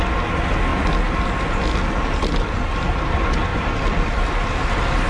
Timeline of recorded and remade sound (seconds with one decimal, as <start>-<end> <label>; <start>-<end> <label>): 0.0-5.1 recorded